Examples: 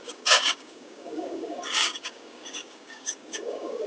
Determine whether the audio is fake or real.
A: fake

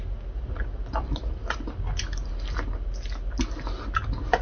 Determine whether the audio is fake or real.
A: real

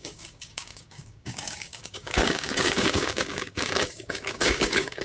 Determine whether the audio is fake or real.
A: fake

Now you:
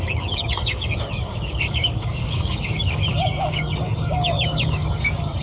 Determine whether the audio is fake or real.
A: fake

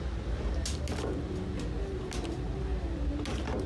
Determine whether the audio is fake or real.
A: real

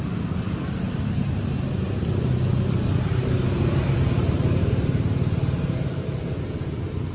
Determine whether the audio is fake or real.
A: real